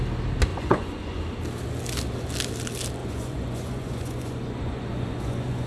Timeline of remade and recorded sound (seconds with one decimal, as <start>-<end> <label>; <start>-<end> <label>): 0.0-0.5 recorded; 0.5-1.2 remade; 1.2-3.0 recorded; 3.0-5.7 remade